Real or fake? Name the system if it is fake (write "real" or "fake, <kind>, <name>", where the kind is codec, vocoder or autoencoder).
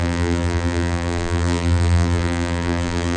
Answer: fake, vocoder, BigVGAN v2